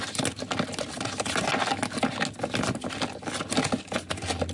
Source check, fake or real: real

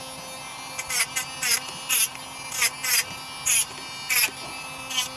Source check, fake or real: real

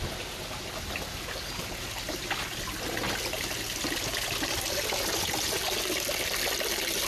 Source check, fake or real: real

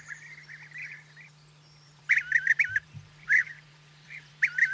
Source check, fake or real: fake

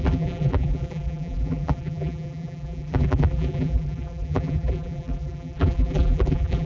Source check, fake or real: fake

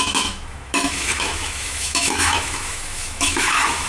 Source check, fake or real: fake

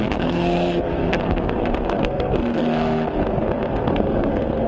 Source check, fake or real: fake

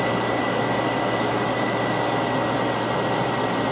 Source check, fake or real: real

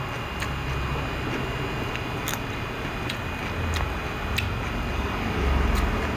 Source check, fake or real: real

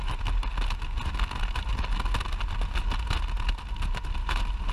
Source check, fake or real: real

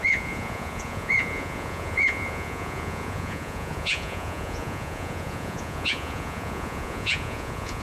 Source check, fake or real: fake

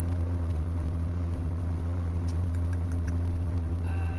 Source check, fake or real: fake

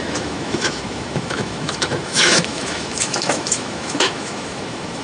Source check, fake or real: fake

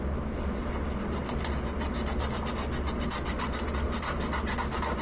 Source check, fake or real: real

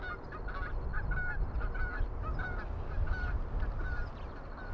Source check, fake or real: real